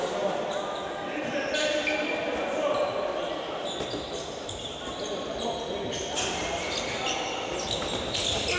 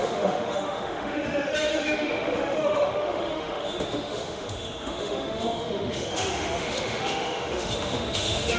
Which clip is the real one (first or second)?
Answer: first